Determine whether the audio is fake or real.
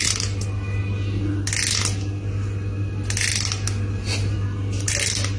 real